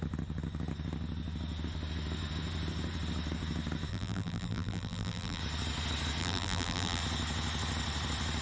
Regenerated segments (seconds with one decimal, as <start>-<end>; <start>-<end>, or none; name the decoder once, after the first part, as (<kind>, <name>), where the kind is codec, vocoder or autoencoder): 3.9-5.4 (vocoder, BigVGAN v2); 6.2-7.0